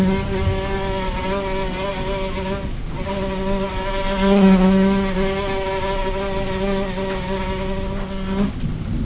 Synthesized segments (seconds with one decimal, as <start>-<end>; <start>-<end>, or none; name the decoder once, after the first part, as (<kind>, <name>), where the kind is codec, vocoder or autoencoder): none